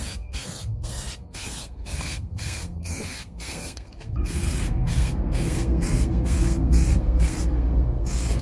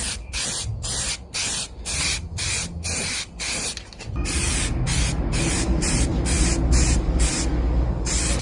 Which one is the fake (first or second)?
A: first